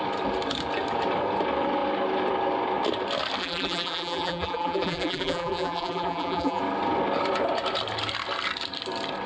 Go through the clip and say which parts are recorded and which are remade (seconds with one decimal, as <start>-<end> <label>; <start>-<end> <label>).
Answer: 0.0-3.4 recorded; 3.4-6.6 remade; 6.6-9.3 recorded